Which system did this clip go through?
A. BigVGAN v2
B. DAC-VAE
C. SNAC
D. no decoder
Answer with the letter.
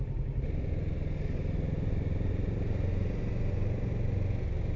D